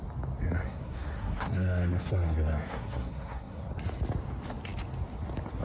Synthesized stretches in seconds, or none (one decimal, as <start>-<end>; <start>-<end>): 0.6-3.7